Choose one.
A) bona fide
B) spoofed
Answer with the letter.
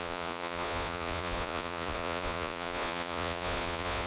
B